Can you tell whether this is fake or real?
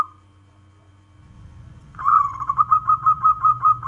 fake